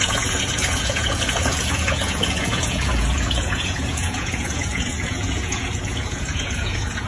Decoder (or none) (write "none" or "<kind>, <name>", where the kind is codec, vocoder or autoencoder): vocoder, Vocos